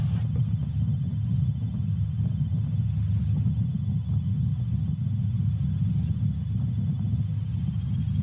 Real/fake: real